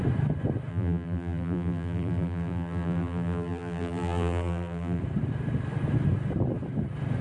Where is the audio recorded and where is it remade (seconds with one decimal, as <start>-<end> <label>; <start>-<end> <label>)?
0.0-0.7 recorded; 0.7-5.0 remade; 5.0-7.2 recorded